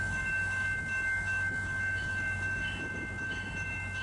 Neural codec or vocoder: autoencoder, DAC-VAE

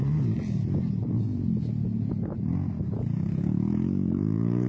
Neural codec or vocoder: none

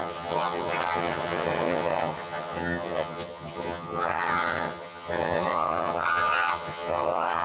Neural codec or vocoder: vocoder, HiFi-GAN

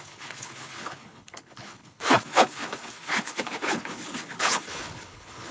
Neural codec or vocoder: codec, HILCodec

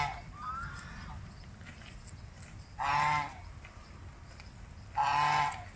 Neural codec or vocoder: none